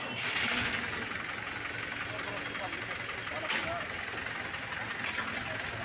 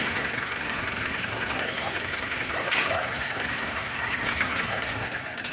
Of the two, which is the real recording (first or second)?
first